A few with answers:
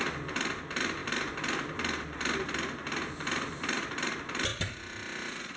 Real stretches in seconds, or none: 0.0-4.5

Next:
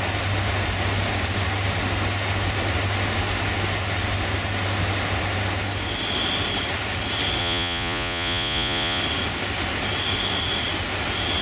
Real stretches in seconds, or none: 0.0-7.4; 9.0-11.4

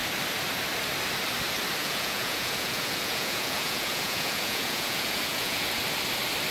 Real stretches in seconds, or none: 0.0-1.8; 5.7-6.5

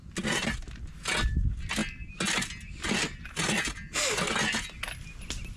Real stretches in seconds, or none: 0.0-5.6

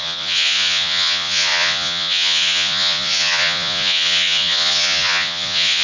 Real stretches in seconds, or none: none

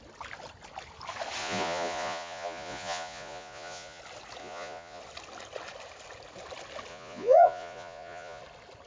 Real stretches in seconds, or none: 0.0-1.4; 4.0-4.4; 5.0-6.9; 8.4-8.9

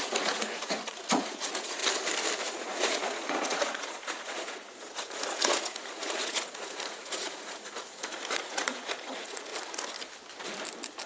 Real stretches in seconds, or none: 1.8-2.4; 9.5-11.1